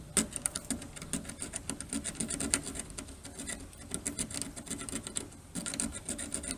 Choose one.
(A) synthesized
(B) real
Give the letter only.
B